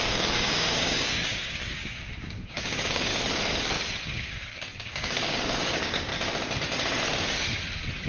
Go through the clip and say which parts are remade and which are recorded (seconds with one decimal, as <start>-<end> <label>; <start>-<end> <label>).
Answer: 0.0-3.1 remade; 3.1-4.0 recorded; 4.0-6.1 remade; 6.1-8.1 recorded